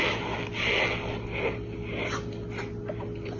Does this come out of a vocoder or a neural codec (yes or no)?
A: no